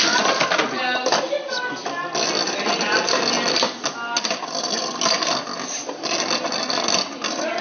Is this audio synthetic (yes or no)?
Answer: no